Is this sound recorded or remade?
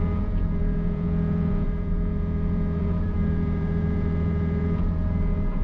remade